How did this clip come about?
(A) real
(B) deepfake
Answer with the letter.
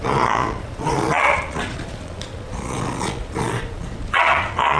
B